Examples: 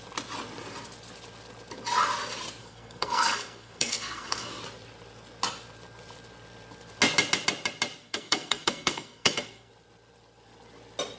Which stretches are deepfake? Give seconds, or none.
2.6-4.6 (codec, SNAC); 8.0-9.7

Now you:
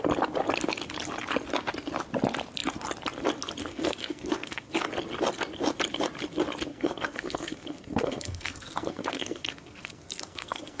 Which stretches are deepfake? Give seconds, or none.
3.7-4.7 (codec, SNAC); 6.7-10.8

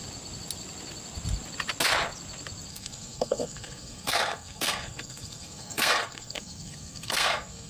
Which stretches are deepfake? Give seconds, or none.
2.7-7.7 (codec, SNAC)

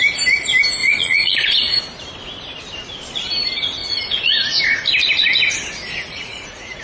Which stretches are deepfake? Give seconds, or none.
0.8-1.8 (vocoder, Vocos); 3.8-4.6; 6.0-6.8

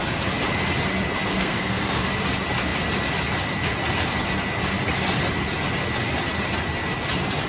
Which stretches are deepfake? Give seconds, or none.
1.3-2.1 (codec, SNAC)

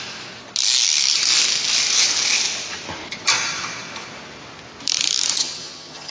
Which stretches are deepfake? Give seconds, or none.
5.4-6.1 (vocoder, HiFi-GAN)

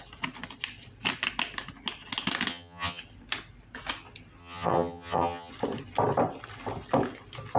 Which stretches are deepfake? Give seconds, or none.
2.5-3.0 (vocoder, HiFi-GAN); 4.4-5.5

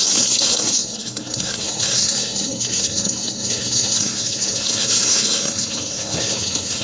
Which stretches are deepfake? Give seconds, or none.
0.0-6.8 (codec, SNAC)